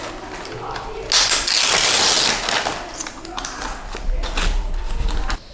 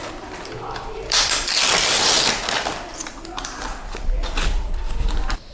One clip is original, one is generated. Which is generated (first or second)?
second